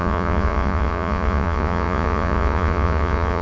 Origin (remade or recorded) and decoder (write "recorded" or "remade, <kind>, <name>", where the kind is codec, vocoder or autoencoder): remade, vocoder, Vocos